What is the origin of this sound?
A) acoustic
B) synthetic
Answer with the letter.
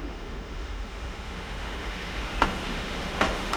B